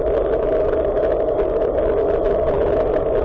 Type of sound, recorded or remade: recorded